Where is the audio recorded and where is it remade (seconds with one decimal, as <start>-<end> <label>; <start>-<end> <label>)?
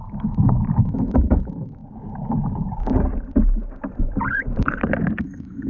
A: 0.0-1.8 remade; 1.8-5.2 recorded; 5.2-5.7 remade